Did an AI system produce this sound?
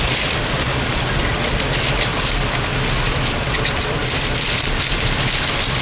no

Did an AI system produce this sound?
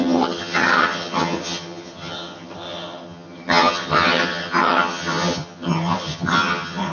yes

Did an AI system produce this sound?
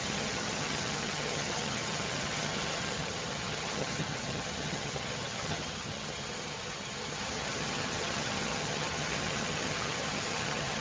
yes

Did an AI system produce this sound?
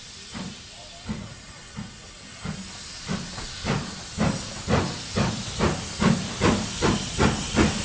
no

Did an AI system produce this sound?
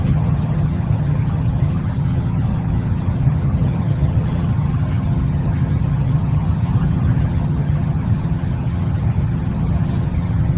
yes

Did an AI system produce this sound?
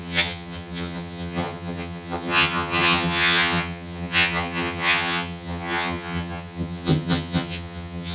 yes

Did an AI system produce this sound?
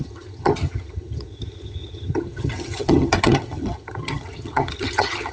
yes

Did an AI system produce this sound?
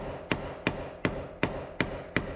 no